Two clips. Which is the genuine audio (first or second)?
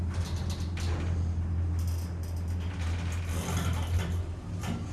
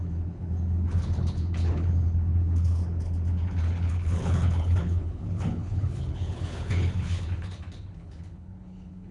first